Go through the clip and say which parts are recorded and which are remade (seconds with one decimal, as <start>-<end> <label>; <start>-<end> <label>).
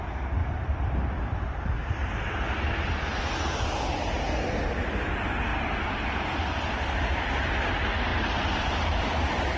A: 0.0-9.6 recorded